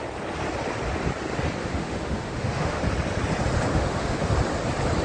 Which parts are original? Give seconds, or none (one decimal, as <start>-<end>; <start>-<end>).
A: 0.0-1.6; 2.8-3.7; 4.3-5.0